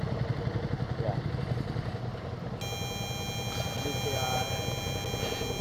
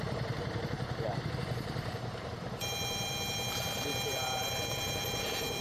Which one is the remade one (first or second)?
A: second